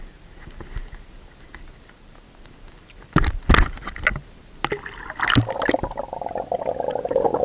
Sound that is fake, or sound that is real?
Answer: real